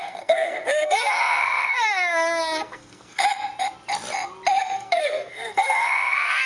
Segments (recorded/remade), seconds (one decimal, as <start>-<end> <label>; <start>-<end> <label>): 0.0-3.2 remade; 3.2-4.6 recorded; 4.6-6.5 remade